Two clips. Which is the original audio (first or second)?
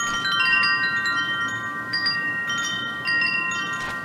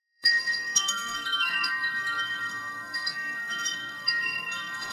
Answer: first